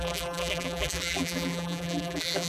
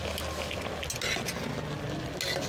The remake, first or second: first